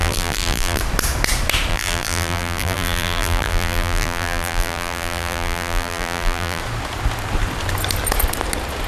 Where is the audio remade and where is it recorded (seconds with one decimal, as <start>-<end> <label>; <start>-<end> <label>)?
0.0-0.8 remade; 0.8-1.7 recorded; 1.7-6.6 remade; 6.6-8.9 recorded